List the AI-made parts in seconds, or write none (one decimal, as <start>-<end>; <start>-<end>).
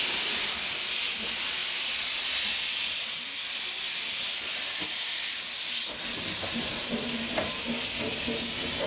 none